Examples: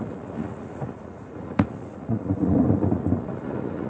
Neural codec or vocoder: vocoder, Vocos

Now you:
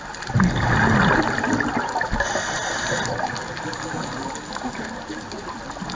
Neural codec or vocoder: none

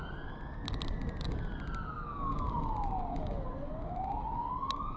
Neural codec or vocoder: none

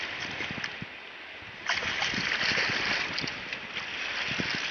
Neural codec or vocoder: none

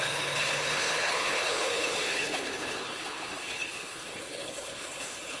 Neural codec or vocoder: codec, HILCodec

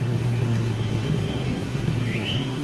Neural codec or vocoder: codec, SNAC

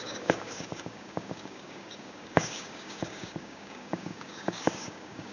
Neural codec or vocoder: codec, DAC